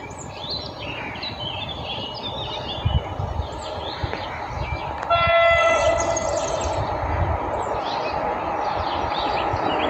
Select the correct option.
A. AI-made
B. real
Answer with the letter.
B